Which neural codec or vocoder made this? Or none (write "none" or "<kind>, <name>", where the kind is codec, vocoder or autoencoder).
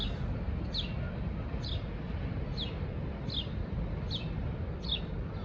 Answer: none